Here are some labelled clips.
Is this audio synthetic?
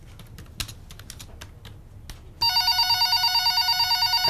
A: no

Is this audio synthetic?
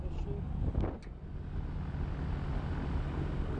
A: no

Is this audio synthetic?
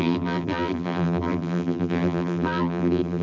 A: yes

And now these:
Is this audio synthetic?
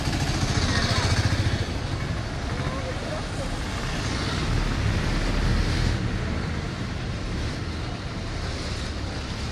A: no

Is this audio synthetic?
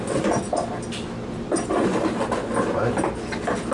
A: no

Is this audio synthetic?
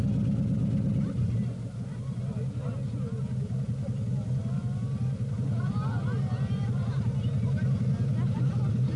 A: no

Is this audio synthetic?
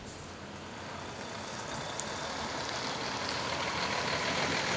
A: no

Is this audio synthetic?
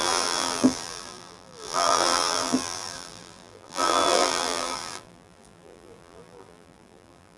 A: yes